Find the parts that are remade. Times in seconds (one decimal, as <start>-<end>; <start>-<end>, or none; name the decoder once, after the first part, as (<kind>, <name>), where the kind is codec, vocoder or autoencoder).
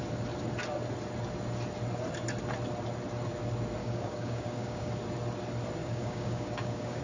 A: 3.8-4.9 (codec, DAC); 5.8-7.0